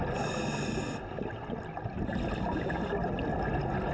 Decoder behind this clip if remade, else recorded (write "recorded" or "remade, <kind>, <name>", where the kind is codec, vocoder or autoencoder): recorded